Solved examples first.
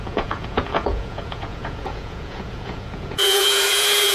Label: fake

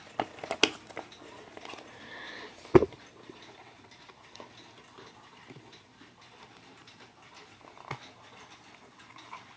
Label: real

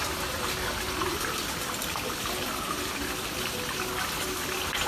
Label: real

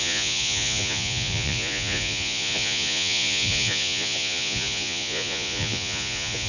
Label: fake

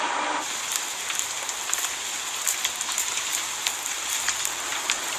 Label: real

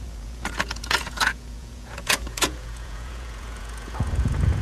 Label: fake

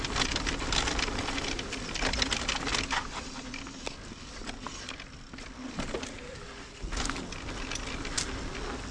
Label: real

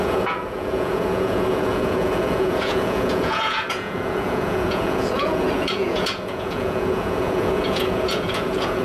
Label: fake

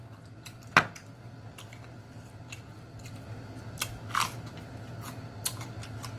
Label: real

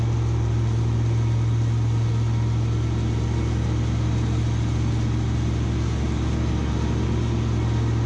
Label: real